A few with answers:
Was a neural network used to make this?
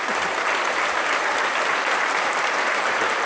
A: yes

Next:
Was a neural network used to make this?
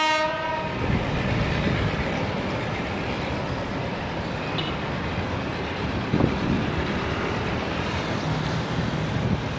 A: no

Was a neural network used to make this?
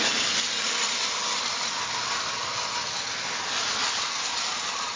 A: no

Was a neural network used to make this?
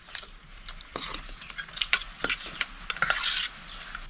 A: yes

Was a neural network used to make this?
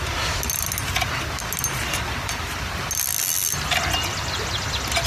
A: no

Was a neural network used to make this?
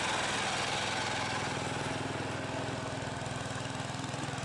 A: no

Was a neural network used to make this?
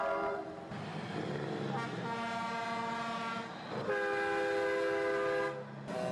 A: no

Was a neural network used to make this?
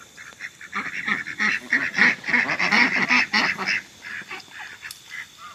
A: no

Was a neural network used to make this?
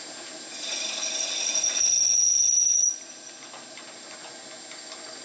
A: no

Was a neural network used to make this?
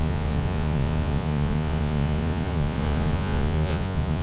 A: yes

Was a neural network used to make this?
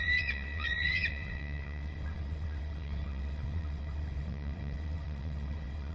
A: yes